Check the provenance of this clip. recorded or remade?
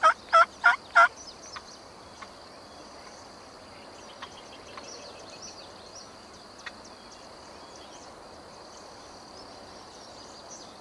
recorded